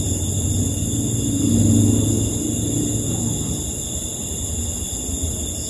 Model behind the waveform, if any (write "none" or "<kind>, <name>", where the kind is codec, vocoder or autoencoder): none